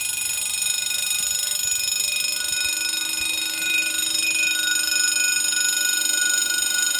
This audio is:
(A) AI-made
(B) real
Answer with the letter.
B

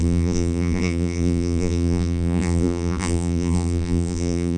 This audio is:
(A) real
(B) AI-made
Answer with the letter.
B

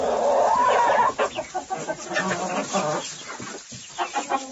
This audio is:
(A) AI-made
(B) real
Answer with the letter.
B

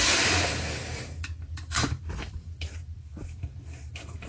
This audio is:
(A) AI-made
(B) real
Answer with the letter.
A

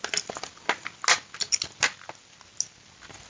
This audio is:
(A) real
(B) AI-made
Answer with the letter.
A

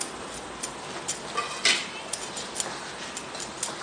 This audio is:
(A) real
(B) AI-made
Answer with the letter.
A